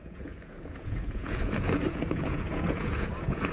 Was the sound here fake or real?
fake